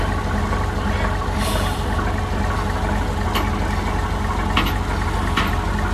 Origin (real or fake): real